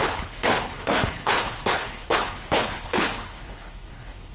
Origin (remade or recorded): remade